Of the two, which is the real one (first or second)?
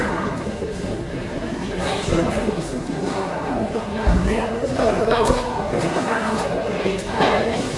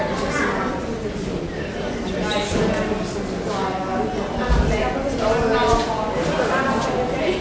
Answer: second